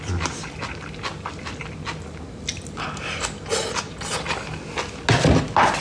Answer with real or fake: real